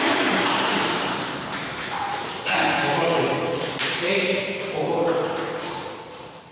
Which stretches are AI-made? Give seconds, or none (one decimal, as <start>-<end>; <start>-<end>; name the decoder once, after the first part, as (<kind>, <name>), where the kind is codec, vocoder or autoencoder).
0.0-6.5 (vocoder, BigVGAN v2)